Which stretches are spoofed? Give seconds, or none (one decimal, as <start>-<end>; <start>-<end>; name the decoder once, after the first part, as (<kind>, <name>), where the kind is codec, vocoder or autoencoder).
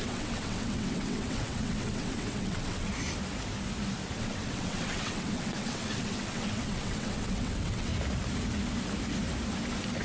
0.0-2.9 (vocoder, WaveNeXt); 4.2-7.9